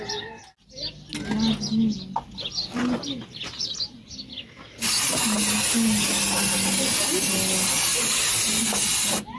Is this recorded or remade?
recorded